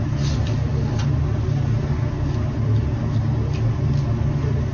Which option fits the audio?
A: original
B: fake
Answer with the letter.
A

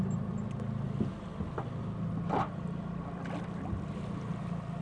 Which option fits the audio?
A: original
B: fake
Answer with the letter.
A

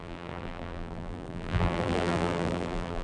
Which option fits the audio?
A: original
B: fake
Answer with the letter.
B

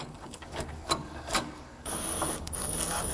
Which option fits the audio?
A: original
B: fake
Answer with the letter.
B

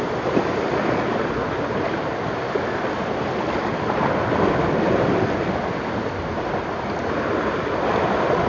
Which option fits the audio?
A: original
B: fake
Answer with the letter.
A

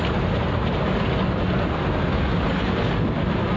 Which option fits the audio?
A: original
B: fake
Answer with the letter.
A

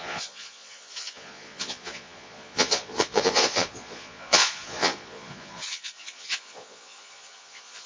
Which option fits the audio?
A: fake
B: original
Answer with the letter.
A